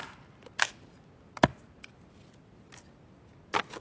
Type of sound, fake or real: real